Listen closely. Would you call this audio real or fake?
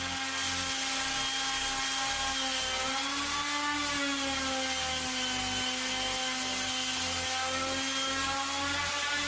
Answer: real